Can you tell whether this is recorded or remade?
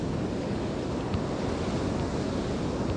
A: recorded